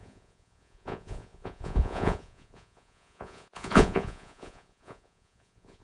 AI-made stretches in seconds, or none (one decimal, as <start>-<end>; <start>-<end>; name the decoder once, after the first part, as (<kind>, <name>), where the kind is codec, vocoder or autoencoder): 0.0-5.8 (vocoder, Vocos)